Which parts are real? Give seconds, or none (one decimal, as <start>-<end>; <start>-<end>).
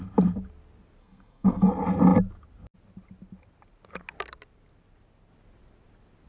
0.0-1.0; 1.7-6.3